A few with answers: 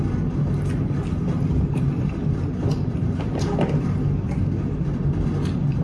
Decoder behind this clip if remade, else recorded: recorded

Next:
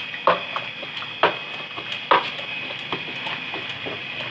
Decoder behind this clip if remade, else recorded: recorded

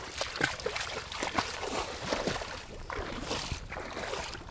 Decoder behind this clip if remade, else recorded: remade, vocoder, BigVGAN v2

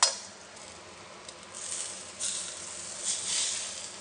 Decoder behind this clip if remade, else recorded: recorded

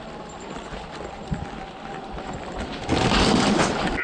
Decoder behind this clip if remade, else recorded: remade, vocoder, BigVGAN v2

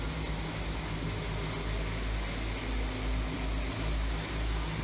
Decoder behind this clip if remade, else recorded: recorded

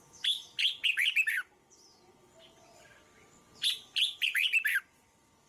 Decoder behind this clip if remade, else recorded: recorded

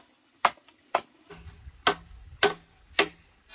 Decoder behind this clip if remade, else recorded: recorded